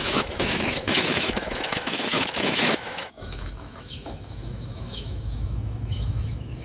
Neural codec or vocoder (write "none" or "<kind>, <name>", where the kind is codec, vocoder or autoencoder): autoencoder, DAC-VAE